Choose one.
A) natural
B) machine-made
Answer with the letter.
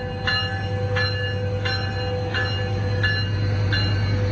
A